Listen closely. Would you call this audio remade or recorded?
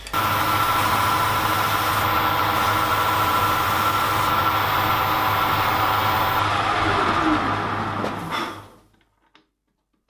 recorded